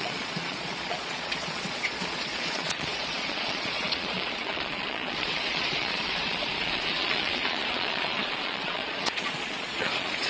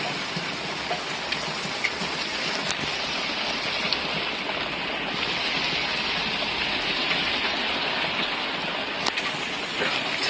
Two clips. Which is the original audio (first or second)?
second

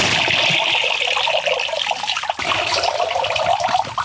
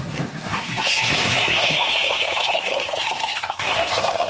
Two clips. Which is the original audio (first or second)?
first